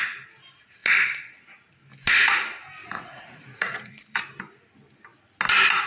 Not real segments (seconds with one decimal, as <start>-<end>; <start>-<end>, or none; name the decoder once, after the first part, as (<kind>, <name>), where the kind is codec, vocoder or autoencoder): 2.8-3.9 (vocoder, Vocos)